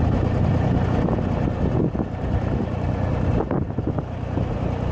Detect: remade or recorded recorded